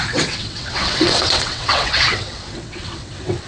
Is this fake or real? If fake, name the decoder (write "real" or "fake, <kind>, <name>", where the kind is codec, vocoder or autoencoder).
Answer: fake, vocoder, WaveNeXt